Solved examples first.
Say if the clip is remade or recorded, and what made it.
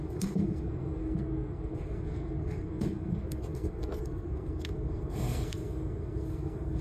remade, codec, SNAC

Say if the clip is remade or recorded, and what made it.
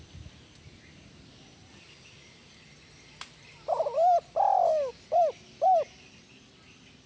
recorded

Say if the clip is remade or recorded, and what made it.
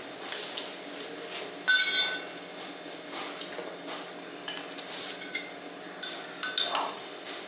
recorded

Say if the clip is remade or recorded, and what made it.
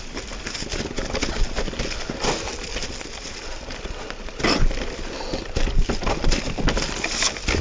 recorded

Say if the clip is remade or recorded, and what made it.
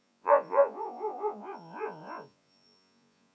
remade, vocoder, Vocos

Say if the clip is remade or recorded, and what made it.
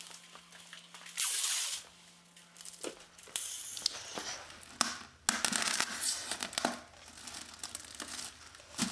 recorded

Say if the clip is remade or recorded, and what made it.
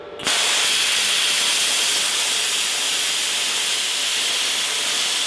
recorded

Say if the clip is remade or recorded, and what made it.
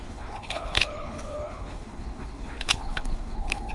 remade, codec, HILCodec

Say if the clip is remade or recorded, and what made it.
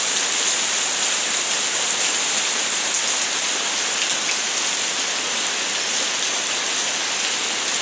recorded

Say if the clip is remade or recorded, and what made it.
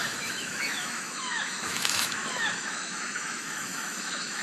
remade, autoencoder, DAC-VAE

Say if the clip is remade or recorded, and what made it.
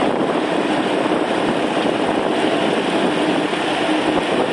recorded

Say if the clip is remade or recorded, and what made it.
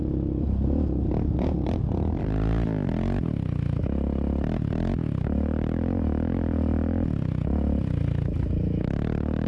recorded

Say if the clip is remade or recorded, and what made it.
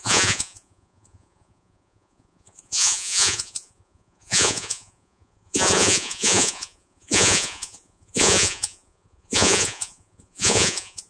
remade, vocoder, Vocos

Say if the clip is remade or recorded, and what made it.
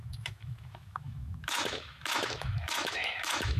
remade, autoencoder, DAC-VAE